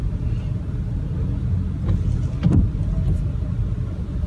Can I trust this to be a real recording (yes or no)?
yes